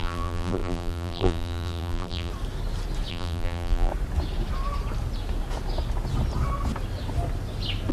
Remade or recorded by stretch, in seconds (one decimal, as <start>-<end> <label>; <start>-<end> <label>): 0.0-2.3 remade; 2.3-3.1 recorded; 3.1-3.9 remade; 3.9-7.9 recorded